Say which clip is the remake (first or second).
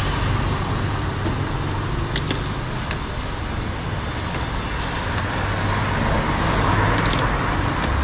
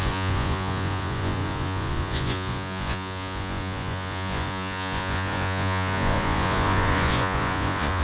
second